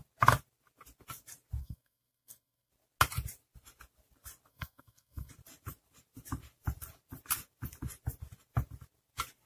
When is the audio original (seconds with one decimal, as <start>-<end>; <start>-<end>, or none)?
0.0-1.6; 2.7-4.5; 5.3-9.5